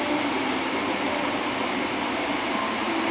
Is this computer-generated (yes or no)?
yes